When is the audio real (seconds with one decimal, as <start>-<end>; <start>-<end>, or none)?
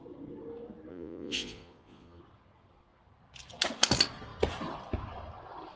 0.0-0.9; 2.2-5.8